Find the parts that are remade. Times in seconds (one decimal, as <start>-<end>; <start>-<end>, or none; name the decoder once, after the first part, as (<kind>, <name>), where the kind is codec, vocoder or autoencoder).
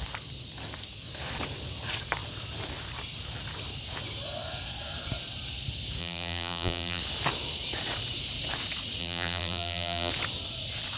6.0-7.0 (vocoder, BigVGAN v2); 9.0-10.1